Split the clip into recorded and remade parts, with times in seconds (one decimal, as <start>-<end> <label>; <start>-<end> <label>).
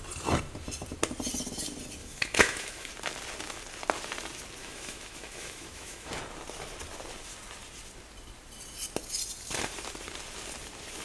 0.0-2.0 recorded; 2.0-2.9 remade; 2.9-4.6 recorded; 4.6-6.1 remade; 6.1-11.0 recorded